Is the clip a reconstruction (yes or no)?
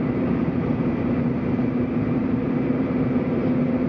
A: yes